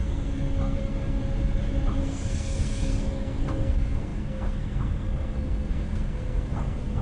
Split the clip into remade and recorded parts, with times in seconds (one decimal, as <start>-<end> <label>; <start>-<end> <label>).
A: 0.0-1.2 remade; 1.2-2.0 recorded; 2.0-7.0 remade